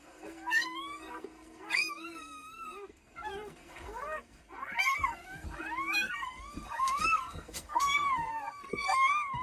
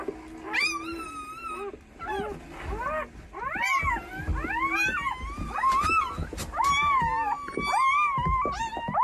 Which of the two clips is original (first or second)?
second